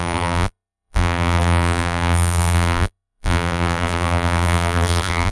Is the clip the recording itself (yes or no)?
no